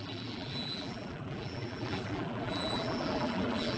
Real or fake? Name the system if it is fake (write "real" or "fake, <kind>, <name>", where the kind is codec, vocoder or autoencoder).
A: fake, vocoder, BigVGAN v2